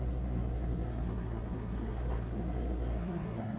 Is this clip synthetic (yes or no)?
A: yes